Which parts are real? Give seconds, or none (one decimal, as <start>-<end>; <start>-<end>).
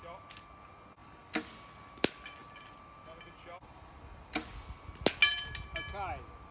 0.0-6.5